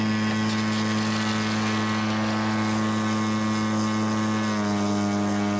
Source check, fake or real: real